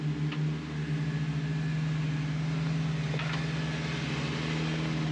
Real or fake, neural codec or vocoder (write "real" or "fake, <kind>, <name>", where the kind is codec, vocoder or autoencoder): real